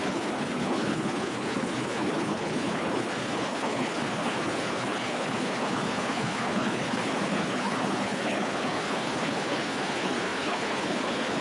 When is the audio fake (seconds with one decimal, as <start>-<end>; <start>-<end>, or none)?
0.0-11.4